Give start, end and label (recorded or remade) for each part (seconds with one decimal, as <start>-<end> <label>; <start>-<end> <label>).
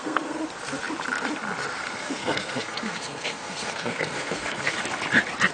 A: 0.0-0.4 remade; 0.4-2.0 recorded; 2.0-4.6 remade; 4.6-5.5 recorded